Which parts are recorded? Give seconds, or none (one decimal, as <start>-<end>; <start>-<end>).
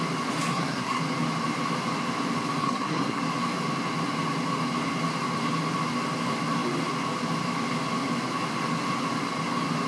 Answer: 0.0-0.5; 1.0-2.6; 3.2-9.9